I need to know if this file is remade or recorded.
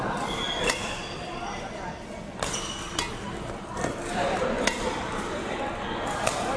recorded